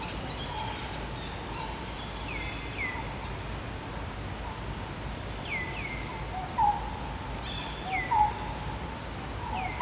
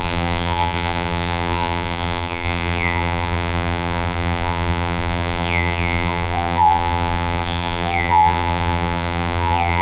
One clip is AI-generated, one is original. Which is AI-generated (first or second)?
second